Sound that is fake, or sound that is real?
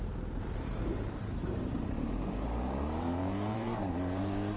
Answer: fake